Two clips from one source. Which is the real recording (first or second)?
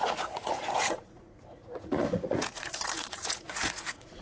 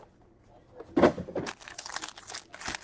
second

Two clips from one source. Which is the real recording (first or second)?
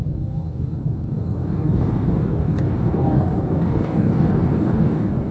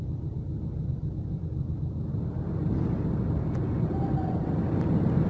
second